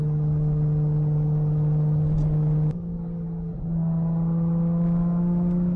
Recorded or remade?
recorded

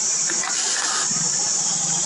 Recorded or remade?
remade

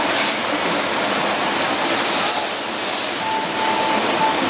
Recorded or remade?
recorded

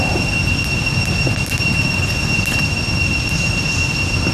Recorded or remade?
recorded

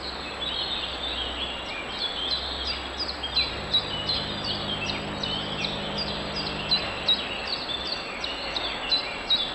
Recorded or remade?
recorded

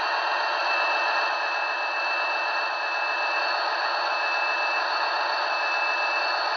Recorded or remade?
recorded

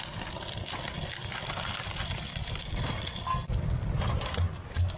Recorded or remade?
recorded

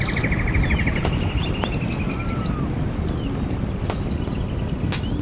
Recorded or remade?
recorded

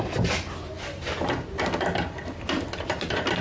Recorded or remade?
recorded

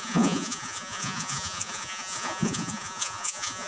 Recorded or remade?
remade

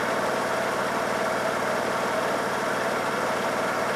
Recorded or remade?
recorded